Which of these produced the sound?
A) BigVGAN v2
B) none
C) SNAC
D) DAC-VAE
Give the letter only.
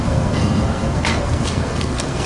C